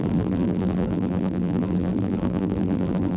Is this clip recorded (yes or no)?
no